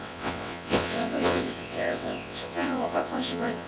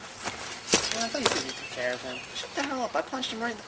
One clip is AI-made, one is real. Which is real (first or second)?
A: second